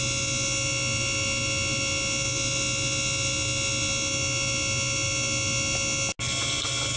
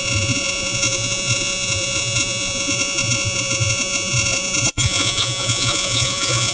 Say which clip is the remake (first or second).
second